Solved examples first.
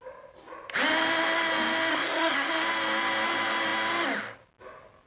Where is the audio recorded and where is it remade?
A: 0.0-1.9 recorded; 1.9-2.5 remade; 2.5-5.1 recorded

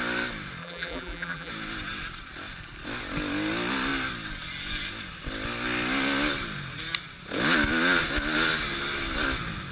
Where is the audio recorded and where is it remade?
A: 0.0-0.6 recorded; 0.6-1.5 remade; 1.5-9.7 recorded

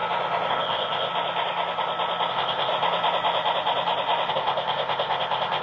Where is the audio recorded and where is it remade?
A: 0.0-0.5 recorded; 0.5-1.1 remade; 1.1-2.3 recorded; 2.3-2.7 remade; 2.7-4.3 recorded; 4.3-5.6 remade

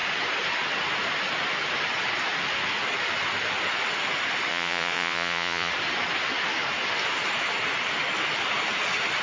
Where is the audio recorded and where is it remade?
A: 0.0-4.5 recorded; 4.5-5.7 remade; 5.7-9.2 recorded